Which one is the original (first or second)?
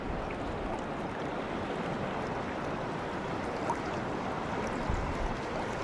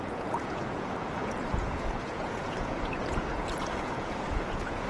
first